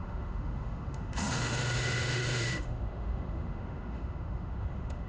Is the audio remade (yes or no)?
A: yes